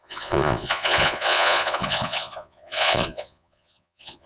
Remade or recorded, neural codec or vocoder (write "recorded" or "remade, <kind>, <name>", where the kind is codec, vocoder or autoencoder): remade, vocoder, Vocos